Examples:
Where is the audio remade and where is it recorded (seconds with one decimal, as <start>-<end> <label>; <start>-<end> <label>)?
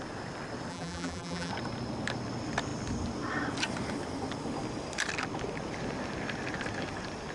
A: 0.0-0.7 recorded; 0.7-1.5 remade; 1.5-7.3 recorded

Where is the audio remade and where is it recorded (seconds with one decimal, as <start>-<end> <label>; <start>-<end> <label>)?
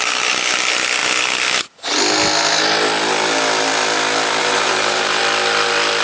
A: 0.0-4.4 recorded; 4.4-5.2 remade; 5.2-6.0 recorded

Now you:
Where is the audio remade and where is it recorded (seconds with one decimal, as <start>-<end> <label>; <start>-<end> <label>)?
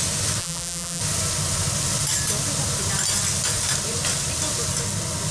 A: 0.0-0.4 recorded; 0.4-1.0 remade; 1.0-5.3 recorded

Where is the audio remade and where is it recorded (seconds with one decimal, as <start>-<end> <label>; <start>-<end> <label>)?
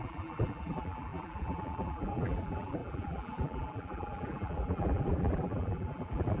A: 0.0-6.4 remade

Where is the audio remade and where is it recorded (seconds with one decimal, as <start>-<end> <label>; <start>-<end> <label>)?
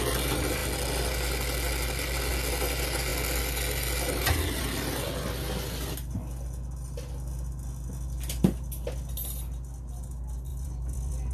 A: 0.0-10.5 recorded; 10.5-11.3 remade